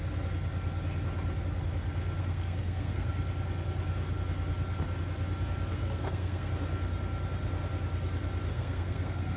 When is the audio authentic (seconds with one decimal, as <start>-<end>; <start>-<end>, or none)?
0.0-2.2; 3.1-5.7; 6.5-8.5